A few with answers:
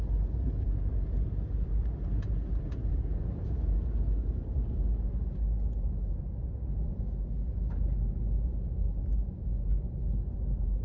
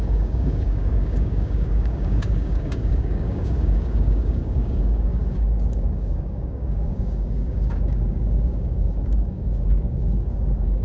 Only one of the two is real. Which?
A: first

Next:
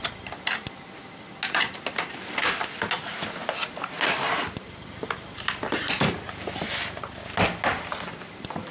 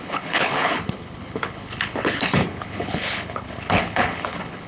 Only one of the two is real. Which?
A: first